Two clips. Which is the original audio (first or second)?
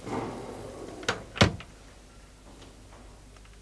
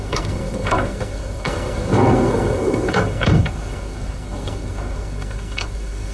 first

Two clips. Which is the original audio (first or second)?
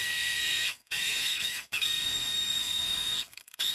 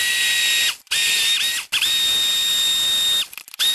second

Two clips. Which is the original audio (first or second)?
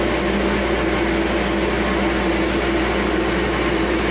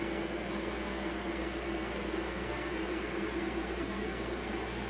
first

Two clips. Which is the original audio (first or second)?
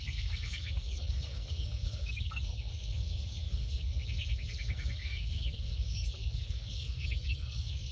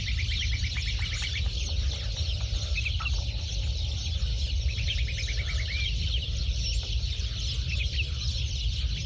second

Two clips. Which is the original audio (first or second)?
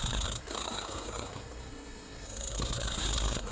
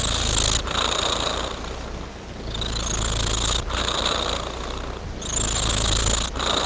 second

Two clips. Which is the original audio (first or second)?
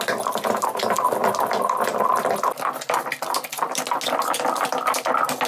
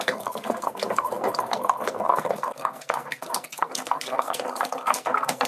first